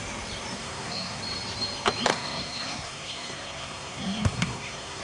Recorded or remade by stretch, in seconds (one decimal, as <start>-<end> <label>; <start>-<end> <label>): 0.0-0.6 recorded; 0.6-1.2 remade; 1.2-2.1 recorded; 2.1-5.0 remade